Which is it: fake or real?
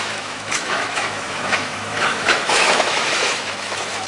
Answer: fake